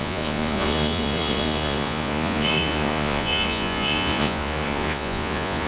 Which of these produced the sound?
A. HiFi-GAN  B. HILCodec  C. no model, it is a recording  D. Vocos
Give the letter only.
D